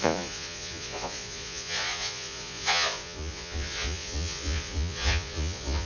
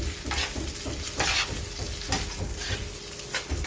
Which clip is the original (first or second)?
second